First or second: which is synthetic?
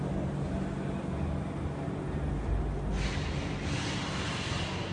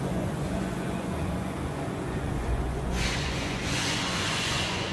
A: second